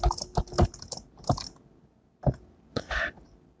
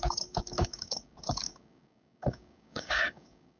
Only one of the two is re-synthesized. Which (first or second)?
second